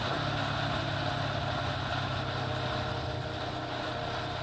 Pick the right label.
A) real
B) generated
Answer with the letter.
B